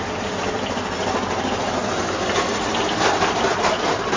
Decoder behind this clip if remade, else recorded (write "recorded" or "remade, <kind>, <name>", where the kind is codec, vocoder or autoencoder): recorded